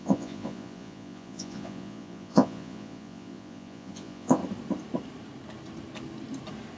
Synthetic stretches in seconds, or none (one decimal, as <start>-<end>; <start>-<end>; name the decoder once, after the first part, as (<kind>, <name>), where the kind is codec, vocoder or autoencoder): 0.0-4.4 (vocoder, Vocos)